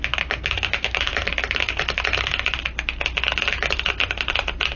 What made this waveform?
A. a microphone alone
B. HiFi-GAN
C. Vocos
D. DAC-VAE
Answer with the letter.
A